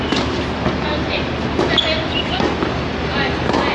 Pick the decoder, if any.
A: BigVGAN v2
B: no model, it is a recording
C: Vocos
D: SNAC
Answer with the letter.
B